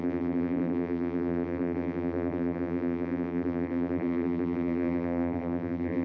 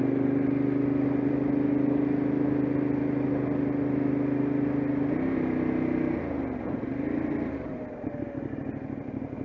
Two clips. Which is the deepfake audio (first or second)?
first